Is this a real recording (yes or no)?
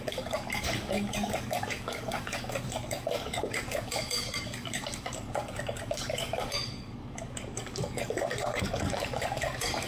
no